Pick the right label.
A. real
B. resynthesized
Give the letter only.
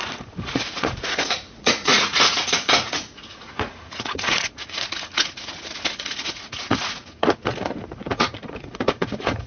B